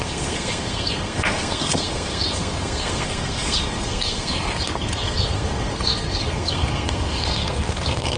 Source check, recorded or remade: remade